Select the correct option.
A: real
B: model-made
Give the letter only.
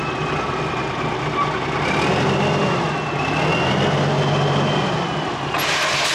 A